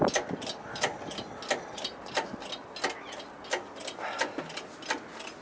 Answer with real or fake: real